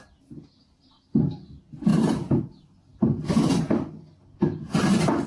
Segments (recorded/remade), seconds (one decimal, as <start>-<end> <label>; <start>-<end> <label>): 0.0-1.9 recorded; 1.9-2.5 remade; 2.5-5.3 recorded